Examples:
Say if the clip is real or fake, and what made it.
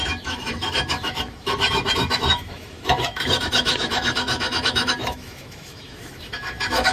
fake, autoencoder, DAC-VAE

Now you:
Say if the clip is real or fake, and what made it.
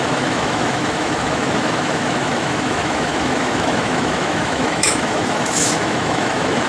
fake, autoencoder, DAC-VAE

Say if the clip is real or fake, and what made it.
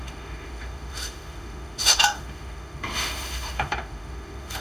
fake, autoencoder, DAC-VAE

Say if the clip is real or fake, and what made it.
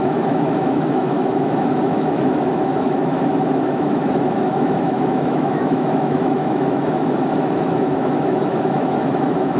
fake, autoencoder, DAC-VAE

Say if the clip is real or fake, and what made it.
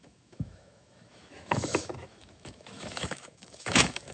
fake, autoencoder, DAC-VAE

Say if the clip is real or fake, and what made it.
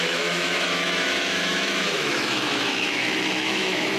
fake, autoencoder, DAC-VAE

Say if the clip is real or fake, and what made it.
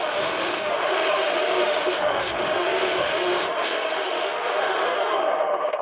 fake, autoencoder, DAC-VAE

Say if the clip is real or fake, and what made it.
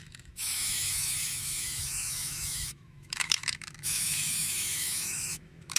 fake, autoencoder, DAC-VAE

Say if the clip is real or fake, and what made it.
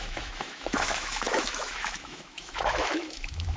fake, autoencoder, DAC-VAE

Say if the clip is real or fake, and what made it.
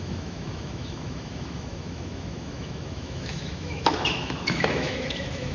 fake, autoencoder, DAC-VAE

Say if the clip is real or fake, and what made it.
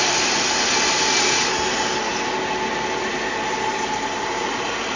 real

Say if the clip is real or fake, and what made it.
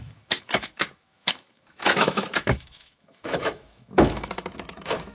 fake, autoencoder, DAC-VAE